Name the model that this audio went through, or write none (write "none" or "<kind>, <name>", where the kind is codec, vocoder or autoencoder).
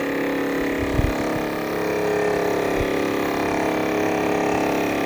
none